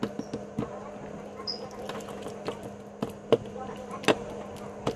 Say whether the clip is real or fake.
real